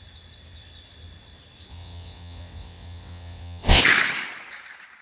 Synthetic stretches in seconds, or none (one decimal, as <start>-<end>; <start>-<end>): 1.7-3.8